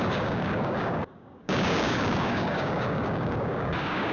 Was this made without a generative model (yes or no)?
no